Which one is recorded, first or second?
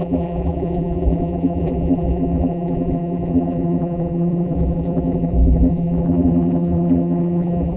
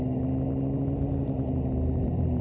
second